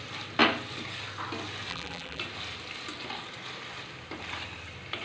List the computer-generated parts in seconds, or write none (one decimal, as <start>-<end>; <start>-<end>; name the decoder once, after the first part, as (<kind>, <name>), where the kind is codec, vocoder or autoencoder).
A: 1.7-2.2 (vocoder, BigVGAN v2)